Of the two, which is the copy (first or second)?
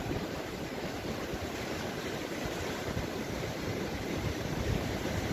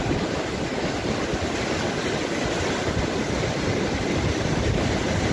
first